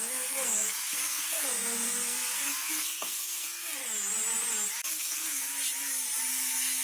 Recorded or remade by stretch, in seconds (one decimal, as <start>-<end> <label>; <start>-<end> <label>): 0.0-3.8 remade; 3.8-4.9 recorded; 4.9-5.5 remade; 5.5-6.3 recorded; 6.3-6.8 remade

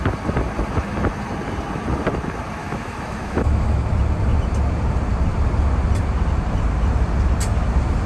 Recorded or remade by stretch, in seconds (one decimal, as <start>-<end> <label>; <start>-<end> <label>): 0.0-2.6 recorded; 2.6-3.8 remade; 3.8-8.1 recorded